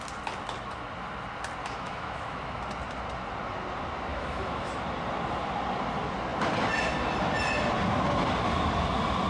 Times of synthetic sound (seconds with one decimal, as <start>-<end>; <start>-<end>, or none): 1.6-2.6; 4.1-4.7